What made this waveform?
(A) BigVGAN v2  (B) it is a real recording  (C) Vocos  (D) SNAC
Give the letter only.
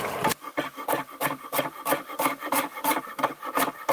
A